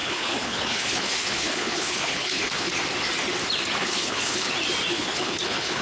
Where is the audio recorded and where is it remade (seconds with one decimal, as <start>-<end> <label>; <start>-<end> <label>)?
0.0-2.7 remade; 2.7-3.8 recorded; 3.8-4.5 remade; 4.5-4.9 recorded; 4.9-5.8 remade